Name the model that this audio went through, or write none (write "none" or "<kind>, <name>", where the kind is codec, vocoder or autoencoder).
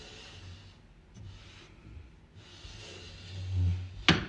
none